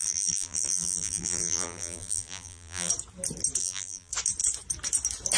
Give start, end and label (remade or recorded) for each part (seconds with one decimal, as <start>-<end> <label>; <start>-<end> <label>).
0.0-2.9 remade; 2.9-3.6 recorded; 3.6-4.1 remade; 4.1-5.4 recorded